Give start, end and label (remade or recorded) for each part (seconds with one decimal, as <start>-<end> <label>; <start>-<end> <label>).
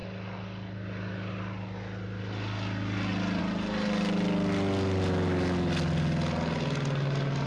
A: 0.0-7.5 recorded